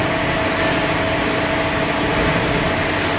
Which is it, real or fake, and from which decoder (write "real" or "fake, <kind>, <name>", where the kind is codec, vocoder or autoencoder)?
real